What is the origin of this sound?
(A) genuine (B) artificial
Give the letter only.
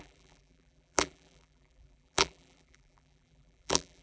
B